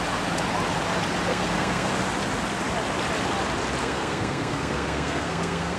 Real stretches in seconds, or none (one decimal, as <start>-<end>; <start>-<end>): 0.0-1.3; 1.9-3.8